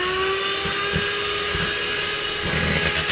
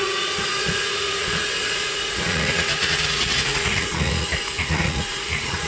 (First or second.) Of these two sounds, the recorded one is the first